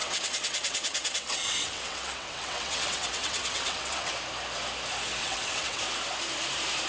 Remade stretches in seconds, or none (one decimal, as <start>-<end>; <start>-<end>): 0.0-4.1; 5.2-5.8